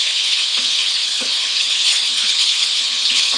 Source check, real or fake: fake